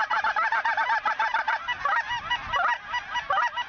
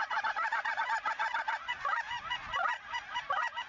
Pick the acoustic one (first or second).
first